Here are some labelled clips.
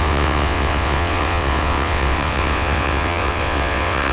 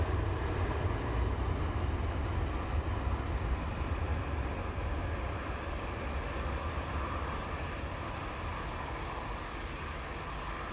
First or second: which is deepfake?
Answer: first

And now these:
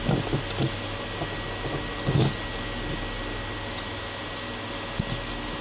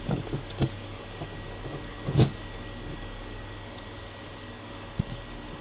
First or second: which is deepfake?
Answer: second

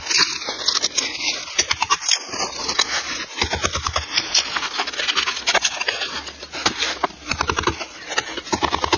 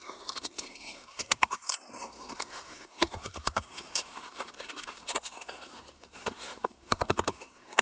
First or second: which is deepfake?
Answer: second